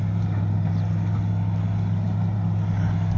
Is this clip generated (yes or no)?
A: no